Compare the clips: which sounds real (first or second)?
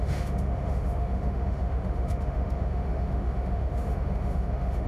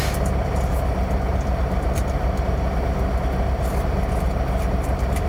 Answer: second